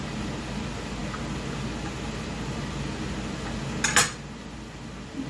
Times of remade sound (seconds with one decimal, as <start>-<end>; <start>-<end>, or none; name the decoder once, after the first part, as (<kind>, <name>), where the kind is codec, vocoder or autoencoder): none